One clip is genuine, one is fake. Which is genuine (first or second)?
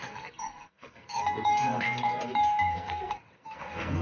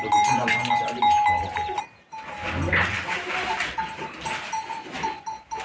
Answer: second